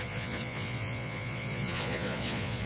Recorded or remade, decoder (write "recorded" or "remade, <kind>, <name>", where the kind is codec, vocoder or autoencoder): remade, vocoder, Vocos